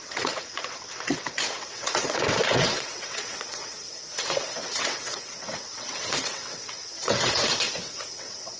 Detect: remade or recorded remade